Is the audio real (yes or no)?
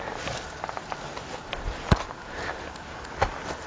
yes